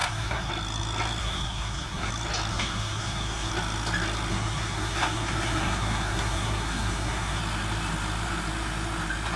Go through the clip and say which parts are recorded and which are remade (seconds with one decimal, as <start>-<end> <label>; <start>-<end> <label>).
0.0-0.5 remade; 0.5-1.2 recorded; 1.2-2.1 remade; 2.1-2.5 recorded; 2.5-3.5 remade; 3.5-4.3 recorded; 4.3-7.4 remade; 7.4-9.4 recorded